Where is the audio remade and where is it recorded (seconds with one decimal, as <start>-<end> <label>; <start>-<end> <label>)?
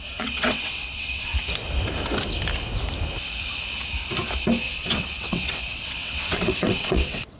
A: 0.0-1.3 remade; 1.3-4.6 recorded; 4.6-7.4 remade